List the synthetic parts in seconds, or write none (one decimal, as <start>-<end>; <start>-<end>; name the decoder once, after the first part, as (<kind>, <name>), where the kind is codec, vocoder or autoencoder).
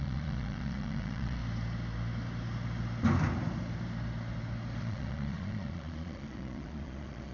0.0-1.4 (vocoder, Vocos); 4.8-7.3